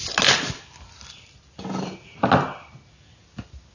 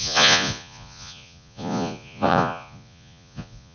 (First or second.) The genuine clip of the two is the first